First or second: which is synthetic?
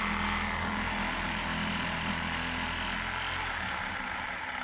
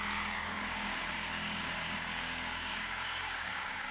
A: second